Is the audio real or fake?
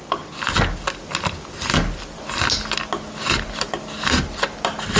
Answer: real